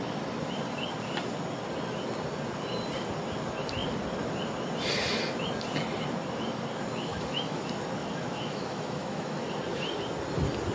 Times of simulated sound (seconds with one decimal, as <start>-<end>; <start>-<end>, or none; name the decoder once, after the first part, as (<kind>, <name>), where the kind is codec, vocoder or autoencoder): 7.1-7.6 (autoencoder, DAC-VAE); 8.0-9.5